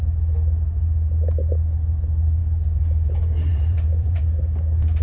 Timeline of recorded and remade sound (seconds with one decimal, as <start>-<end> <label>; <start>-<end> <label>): 0.0-3.5 recorded; 3.5-4.2 remade; 4.2-5.0 recorded

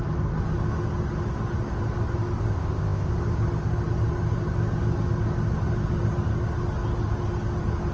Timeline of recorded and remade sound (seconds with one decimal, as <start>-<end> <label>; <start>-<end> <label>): 0.0-2.5 recorded; 2.5-3.1 remade; 3.1-7.9 recorded

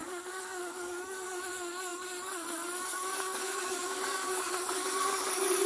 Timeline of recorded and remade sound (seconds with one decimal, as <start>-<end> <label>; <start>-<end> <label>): 0.0-5.7 remade

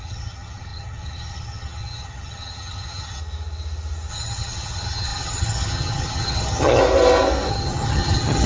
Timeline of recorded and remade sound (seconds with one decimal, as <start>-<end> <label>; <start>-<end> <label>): 0.0-3.2 remade; 3.2-4.1 recorded; 4.1-6.8 remade; 6.8-7.5 recorded; 7.5-8.5 remade

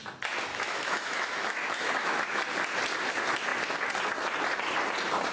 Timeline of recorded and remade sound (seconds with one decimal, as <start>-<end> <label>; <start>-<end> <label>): 0.0-0.5 recorded; 0.5-2.4 remade; 2.4-5.3 recorded

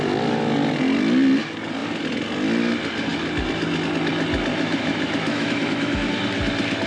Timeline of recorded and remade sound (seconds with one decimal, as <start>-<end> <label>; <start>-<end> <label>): 0.0-4.5 recorded; 4.5-6.1 remade; 6.1-6.9 recorded